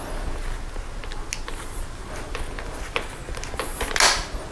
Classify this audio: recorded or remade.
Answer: recorded